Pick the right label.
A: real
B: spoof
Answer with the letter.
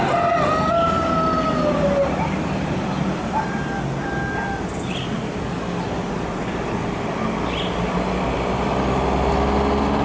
A